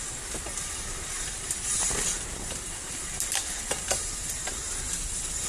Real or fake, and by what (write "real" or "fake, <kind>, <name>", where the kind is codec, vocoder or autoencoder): real